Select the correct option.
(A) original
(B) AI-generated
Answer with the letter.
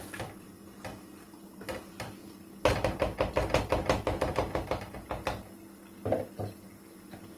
A